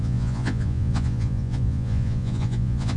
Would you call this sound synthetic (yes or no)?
yes